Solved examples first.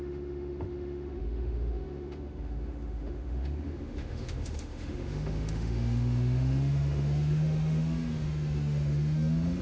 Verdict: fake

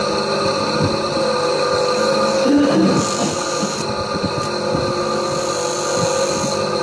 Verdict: real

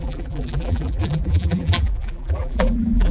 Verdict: fake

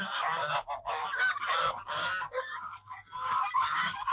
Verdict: fake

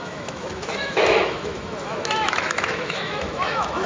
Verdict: fake